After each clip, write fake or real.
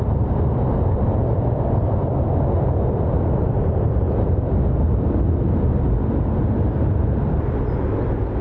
real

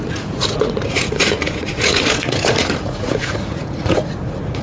fake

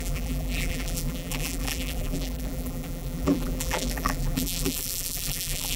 fake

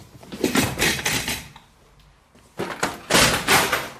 real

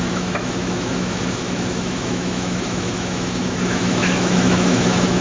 fake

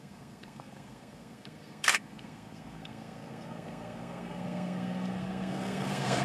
fake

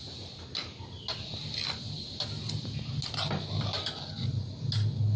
real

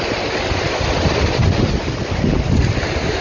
real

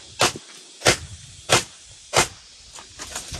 real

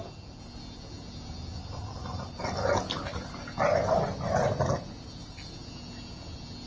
real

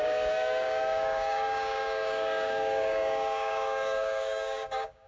fake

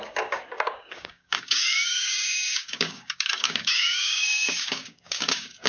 fake